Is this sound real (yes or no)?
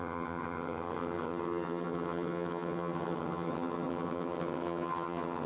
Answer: no